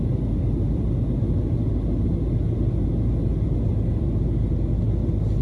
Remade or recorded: recorded